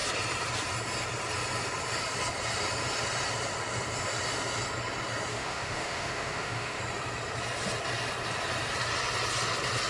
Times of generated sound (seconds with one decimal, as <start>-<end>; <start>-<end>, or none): 5.3-6.8